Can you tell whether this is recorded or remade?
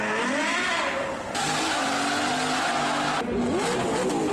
recorded